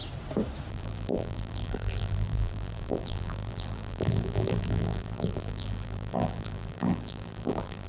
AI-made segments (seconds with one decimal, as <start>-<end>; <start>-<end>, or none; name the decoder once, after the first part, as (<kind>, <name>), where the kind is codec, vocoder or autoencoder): 0.7-7.9 (vocoder, BigVGAN v2)